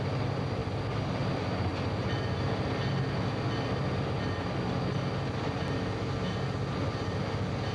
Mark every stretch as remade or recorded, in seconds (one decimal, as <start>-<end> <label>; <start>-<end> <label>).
0.0-7.7 recorded